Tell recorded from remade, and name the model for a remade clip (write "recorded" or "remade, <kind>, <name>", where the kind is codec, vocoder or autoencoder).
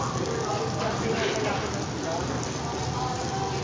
recorded